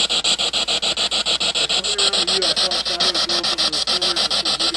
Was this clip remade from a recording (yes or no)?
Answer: no